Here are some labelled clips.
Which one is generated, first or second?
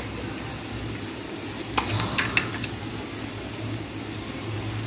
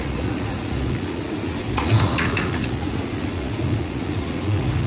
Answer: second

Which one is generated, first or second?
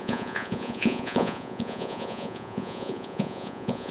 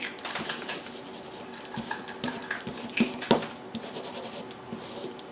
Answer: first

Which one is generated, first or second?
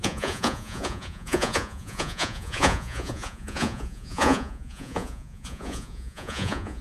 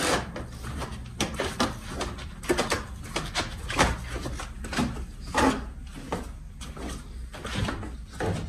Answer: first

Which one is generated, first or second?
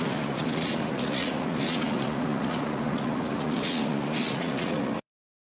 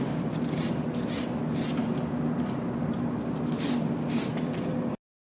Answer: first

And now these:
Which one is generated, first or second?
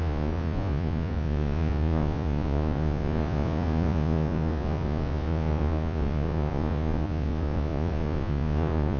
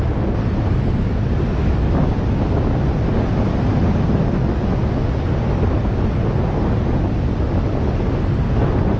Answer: first